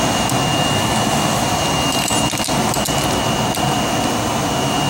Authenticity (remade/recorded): recorded